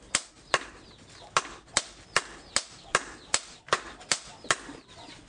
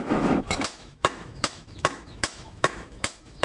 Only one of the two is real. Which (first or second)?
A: first